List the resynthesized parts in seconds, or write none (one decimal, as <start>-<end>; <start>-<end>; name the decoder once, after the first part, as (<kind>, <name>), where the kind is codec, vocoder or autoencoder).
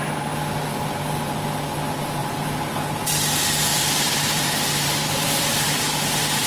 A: 3.7-5.7 (vocoder, BigVGAN v2)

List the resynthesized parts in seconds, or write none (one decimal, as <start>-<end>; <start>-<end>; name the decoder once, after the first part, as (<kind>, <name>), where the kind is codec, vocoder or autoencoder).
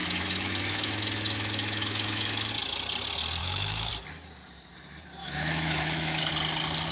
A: 0.0-2.5 (autoencoder, DAC-VAE); 3.4-3.9; 5.2-6.3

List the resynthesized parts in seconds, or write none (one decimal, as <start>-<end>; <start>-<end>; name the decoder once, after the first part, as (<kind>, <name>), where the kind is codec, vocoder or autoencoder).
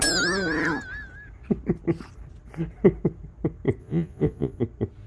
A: 3.8-4.6 (vocoder, Vocos)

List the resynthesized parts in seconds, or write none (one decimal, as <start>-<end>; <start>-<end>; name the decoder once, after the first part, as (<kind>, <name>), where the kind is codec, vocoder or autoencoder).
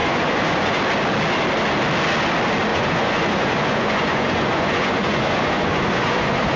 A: 0.0-0.8 (vocoder, Vocos); 2.7-6.6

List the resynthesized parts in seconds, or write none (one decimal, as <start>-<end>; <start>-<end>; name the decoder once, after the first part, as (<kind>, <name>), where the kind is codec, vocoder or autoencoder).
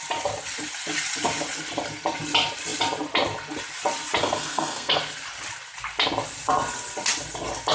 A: 4.2-5.0 (codec, SNAC)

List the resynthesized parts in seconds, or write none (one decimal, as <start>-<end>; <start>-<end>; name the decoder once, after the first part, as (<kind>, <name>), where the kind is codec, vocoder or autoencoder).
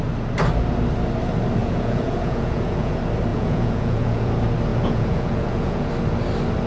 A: 1.6-2.9 (vocoder, Vocos); 3.3-4.3; 4.7-5.9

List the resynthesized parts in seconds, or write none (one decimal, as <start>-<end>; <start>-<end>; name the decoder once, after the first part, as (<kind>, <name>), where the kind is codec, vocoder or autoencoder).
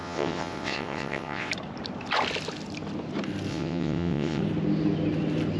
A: 0.0-1.5 (vocoder, WaveNeXt); 3.5-4.4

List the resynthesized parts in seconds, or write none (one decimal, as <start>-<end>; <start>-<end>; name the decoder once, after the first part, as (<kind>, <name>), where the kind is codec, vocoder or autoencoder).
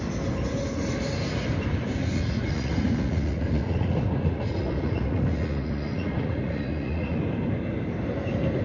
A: 2.0-7.2 (vocoder, Vocos)